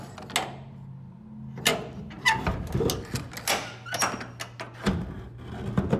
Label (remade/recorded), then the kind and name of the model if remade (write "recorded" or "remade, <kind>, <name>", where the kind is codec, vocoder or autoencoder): recorded